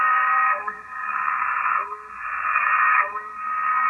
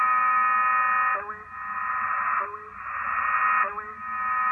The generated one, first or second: first